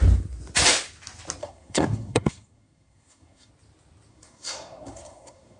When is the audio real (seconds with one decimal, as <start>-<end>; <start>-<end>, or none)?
0.0-1.4; 3.5-4.1